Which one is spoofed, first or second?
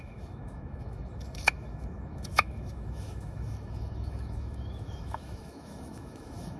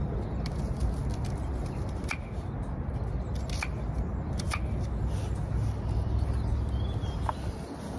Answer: first